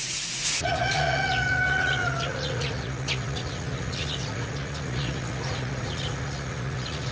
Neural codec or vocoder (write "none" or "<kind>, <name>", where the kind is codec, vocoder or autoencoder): vocoder, Vocos